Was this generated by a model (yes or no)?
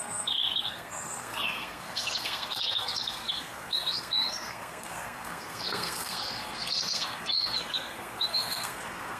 yes